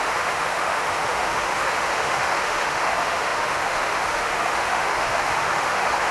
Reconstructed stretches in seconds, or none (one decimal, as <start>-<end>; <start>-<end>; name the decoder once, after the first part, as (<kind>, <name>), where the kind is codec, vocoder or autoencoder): 0.0-6.1 (autoencoder, DAC-VAE)